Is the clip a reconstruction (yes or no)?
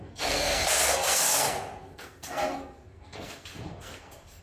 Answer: yes